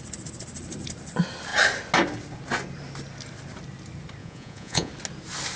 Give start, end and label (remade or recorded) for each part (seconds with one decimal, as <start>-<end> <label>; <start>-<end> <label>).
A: 0.0-4.2 recorded; 4.2-4.9 remade; 4.9-5.6 recorded